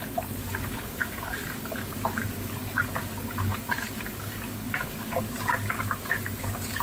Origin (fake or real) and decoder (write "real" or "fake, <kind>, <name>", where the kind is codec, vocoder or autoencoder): fake, codec, DAC